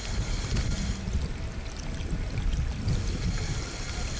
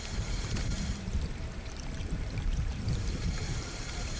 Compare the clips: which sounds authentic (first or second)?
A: first